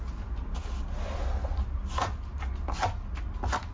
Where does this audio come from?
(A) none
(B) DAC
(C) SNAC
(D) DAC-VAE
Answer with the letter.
A